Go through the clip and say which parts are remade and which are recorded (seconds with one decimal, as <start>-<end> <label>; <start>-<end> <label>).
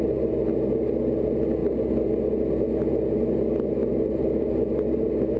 0.0-5.4 recorded